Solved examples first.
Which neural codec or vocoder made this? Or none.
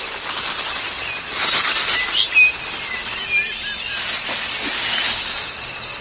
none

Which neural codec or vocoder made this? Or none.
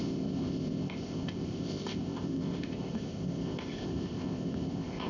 codec, ZipCodec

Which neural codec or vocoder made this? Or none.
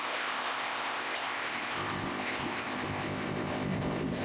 codec, ZipCodec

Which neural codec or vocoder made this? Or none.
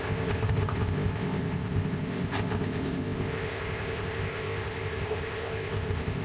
codec, ZipCodec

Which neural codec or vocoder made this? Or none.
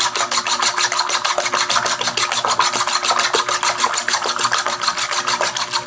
none